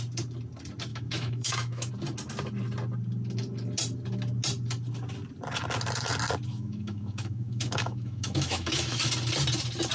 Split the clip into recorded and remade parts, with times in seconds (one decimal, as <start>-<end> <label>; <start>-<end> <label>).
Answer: 0.0-0.9 recorded; 0.9-1.9 remade; 1.9-6.5 recorded; 6.5-9.0 remade; 9.0-9.9 recorded